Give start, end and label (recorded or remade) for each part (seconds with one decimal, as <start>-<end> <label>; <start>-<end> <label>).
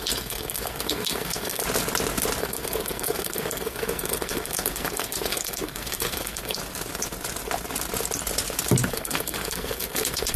0.0-1.6 remade; 1.6-2.4 recorded; 2.4-6.6 remade; 6.6-8.9 recorded; 8.9-10.4 remade